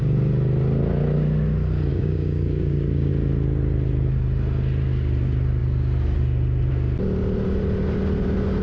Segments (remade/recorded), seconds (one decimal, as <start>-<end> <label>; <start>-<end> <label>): 0.0-1.9 recorded; 1.9-3.1 remade; 3.1-8.6 recorded